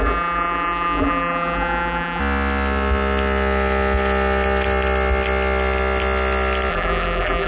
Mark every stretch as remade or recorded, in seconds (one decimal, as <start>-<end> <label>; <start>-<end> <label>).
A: 0.0-2.2 remade; 2.2-6.7 recorded; 6.7-7.5 remade